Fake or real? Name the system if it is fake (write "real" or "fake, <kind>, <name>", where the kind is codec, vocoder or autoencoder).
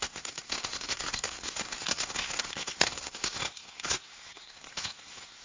fake, codec, SNAC